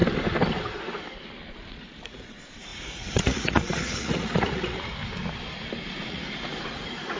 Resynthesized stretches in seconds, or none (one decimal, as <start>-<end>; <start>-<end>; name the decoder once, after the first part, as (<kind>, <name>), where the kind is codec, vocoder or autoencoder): 1.5-5.0 (vocoder, Vocos); 5.9-7.2